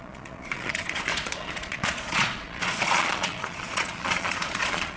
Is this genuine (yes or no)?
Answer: no